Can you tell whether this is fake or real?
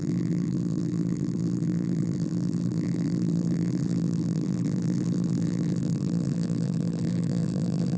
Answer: fake